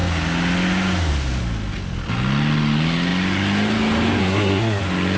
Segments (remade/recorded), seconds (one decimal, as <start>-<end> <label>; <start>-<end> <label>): 0.0-4.2 recorded; 4.2-4.8 remade; 4.8-5.2 recorded